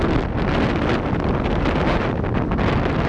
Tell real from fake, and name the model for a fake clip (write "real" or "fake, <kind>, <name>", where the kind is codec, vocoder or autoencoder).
real